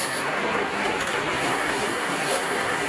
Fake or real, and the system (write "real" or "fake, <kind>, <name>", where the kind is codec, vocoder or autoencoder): fake, codec, SNAC